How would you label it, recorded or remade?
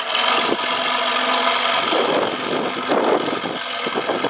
recorded